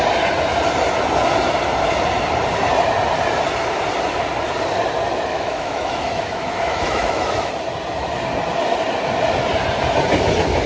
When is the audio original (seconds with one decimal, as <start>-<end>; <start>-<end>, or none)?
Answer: 0.0-5.3; 7.5-10.7

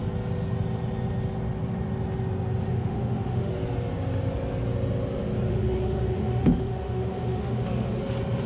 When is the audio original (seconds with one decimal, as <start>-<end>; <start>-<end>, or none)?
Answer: 0.0-2.7; 3.5-5.5; 8.0-8.5

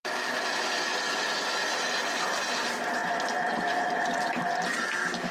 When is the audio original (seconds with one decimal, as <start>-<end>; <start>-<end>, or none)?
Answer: 0.0-5.3

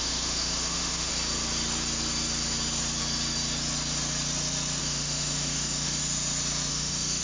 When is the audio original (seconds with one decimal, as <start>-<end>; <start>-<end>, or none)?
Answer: 1.1-4.8; 6.0-6.7